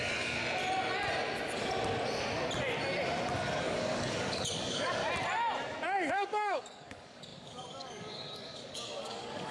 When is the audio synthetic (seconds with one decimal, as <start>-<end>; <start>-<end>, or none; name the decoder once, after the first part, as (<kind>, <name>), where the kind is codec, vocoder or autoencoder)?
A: 0.0-0.4 (codec, DAC); 3.6-5.0; 6.1-9.5